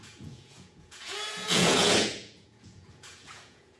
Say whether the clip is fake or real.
fake